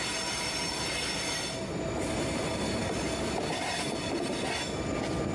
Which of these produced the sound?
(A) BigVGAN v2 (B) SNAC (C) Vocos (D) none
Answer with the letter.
D